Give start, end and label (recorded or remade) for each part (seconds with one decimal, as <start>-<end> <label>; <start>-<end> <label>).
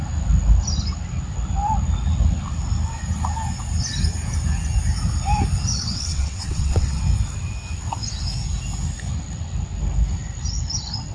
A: 0.0-5.7 recorded; 5.7-7.0 remade; 7.0-11.1 recorded